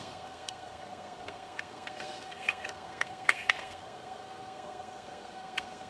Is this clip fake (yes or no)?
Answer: yes